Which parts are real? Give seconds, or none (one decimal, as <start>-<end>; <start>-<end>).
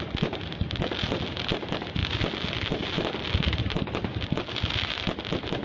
0.0-5.6